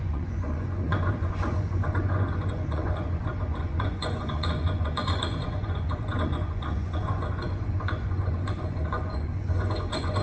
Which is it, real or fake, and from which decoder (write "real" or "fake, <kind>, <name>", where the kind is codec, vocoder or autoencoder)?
fake, vocoder, Vocos